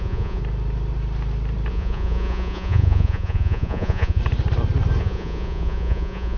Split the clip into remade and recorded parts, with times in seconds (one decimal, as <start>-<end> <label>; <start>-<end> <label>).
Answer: 0.0-0.4 remade; 0.4-1.7 recorded; 1.7-4.2 remade; 4.2-5.0 recorded; 5.0-6.4 remade